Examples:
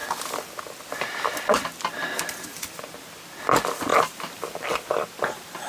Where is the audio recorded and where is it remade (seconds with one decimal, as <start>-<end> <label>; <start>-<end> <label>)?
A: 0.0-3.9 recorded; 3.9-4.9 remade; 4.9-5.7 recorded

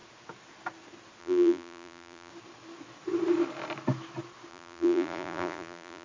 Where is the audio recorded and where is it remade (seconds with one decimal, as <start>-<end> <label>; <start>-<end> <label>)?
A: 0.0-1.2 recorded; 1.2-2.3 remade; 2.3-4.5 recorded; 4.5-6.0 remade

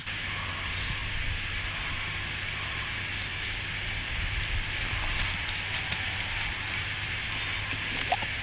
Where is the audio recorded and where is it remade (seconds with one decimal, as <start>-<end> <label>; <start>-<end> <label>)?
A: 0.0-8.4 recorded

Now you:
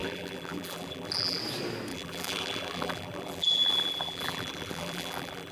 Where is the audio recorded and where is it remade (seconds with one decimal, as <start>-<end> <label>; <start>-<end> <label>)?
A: 0.0-1.4 remade; 1.4-1.9 recorded; 1.9-5.5 remade

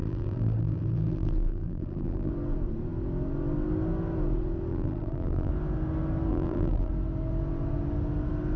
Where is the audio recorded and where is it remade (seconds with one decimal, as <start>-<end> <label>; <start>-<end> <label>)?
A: 0.0-2.3 remade; 2.3-4.7 recorded; 4.7-5.5 remade; 5.5-6.3 recorded; 6.3-6.9 remade; 6.9-8.6 recorded